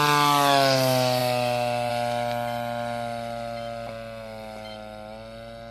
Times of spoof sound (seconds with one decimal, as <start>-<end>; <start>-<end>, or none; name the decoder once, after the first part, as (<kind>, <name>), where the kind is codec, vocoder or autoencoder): none